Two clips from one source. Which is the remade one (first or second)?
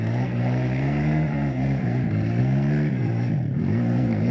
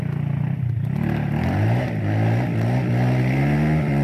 first